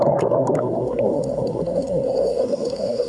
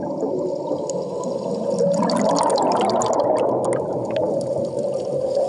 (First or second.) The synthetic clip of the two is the first